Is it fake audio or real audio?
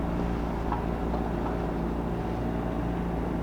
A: real